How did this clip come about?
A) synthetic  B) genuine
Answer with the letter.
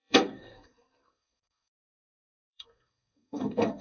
A